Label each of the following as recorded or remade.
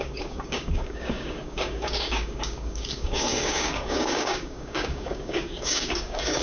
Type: remade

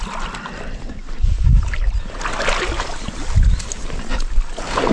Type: recorded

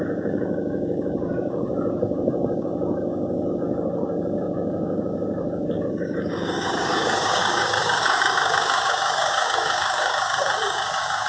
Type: remade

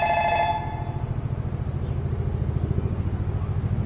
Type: recorded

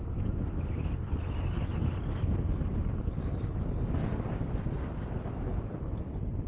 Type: recorded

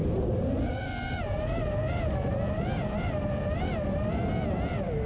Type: recorded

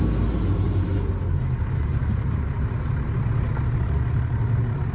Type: recorded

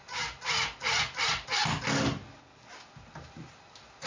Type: recorded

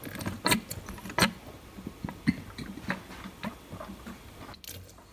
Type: recorded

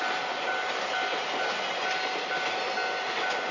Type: recorded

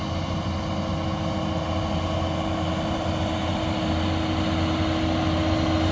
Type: recorded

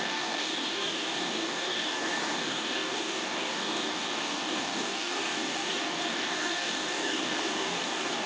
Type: remade